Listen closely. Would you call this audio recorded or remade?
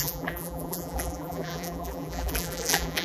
remade